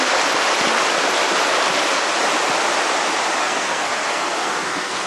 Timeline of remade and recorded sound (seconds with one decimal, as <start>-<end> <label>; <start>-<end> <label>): 0.0-3.4 recorded; 3.4-5.1 remade